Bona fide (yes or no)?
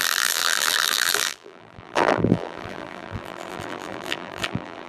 no